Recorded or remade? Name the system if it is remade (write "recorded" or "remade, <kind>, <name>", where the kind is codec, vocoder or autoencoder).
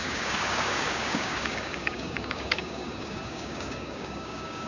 remade, codec, DAC